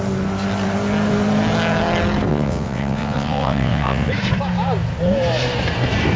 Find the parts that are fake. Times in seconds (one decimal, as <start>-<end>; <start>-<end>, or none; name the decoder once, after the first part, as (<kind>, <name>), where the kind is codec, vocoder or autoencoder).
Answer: 2.3-4.1 (vocoder, WaveNeXt)